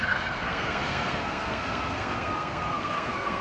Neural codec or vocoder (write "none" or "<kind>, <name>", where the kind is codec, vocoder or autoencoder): codec, SNAC